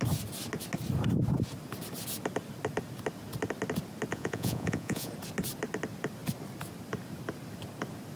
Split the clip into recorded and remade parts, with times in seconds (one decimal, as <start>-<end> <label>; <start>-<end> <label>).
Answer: 0.0-4.1 recorded; 4.1-5.1 remade; 5.1-8.2 recorded